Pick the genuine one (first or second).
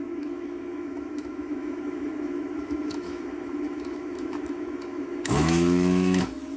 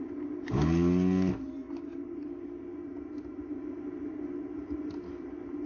second